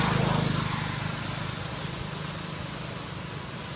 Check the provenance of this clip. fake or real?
real